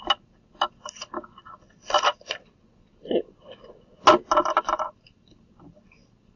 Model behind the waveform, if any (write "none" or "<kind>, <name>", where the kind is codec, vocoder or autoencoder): none